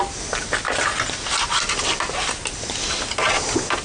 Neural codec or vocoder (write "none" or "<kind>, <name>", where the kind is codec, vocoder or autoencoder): none